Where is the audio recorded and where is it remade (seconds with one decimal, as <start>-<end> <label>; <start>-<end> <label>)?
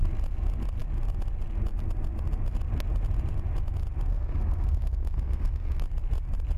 0.0-4.1 recorded; 4.1-5.8 remade; 5.8-6.6 recorded